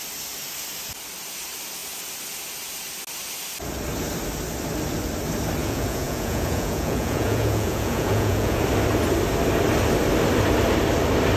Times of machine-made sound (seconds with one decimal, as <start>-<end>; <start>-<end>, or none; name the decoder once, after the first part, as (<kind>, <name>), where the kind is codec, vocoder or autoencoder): 5.6-8.6 (vocoder, Vocos)